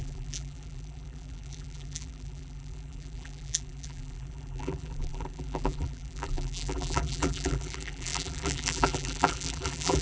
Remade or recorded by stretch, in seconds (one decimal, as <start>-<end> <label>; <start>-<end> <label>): 0.0-10.0 remade